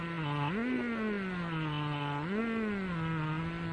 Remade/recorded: recorded